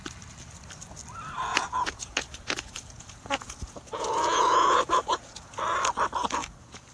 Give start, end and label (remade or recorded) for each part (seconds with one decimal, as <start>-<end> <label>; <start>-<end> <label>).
0.0-1.5 recorded; 1.5-5.6 remade; 5.6-6.4 recorded; 6.4-6.9 remade